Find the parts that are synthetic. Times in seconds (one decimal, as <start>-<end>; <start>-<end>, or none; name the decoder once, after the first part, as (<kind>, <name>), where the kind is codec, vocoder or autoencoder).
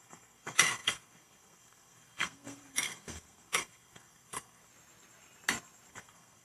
0.0-4.7 (codec, SNAC); 5.9-6.4